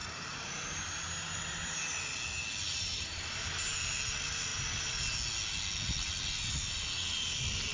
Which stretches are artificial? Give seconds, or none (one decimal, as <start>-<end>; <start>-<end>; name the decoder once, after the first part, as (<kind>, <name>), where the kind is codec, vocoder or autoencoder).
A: 0.0-1.1 (vocoder, BigVGAN v2); 2.8-3.5